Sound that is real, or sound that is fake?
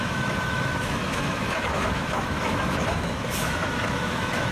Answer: fake